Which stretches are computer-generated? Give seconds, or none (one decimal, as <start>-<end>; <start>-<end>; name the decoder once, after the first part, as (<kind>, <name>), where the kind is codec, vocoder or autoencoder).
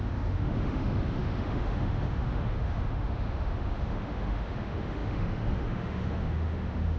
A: 0.0-7.0 (autoencoder, DAC-VAE)